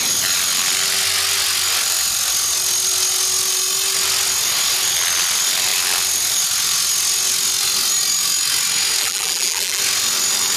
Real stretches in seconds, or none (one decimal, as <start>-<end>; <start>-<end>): 0.0-9.0; 9.8-10.6